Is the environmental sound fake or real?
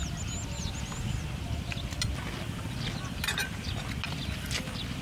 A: real